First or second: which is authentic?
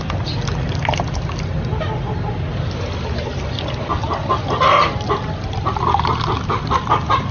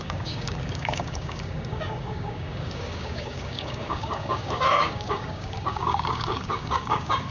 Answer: first